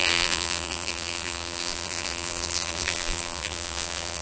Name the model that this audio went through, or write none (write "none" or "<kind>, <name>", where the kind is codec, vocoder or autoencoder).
vocoder, BigVGAN v2